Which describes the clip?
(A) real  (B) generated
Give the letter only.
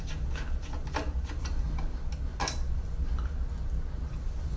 A